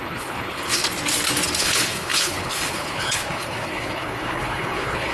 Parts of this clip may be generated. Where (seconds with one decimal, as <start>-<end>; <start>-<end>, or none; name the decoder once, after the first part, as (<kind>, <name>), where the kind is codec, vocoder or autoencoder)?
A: 0.0-0.8 (codec, HILCodec); 1.6-5.1